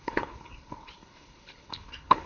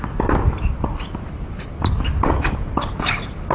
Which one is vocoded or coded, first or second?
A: first